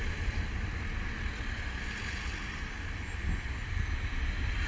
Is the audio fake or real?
real